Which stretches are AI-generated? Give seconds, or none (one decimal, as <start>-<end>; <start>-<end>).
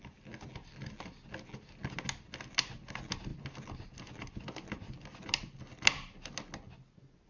none